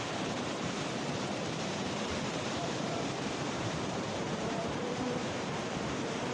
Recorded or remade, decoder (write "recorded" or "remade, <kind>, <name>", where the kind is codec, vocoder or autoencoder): remade, vocoder, BigVGAN v2